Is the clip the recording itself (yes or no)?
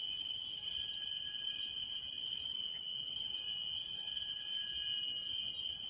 yes